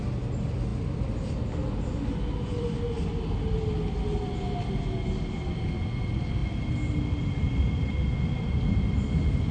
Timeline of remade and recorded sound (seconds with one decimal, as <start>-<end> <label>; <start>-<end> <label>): 0.0-9.5 recorded